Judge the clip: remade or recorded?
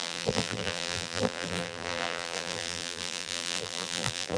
remade